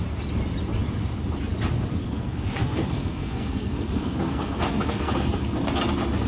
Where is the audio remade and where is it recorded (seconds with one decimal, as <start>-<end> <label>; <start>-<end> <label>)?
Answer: 0.0-1.9 recorded; 1.9-5.7 remade; 5.7-6.3 recorded